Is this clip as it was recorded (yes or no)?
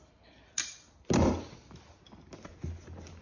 yes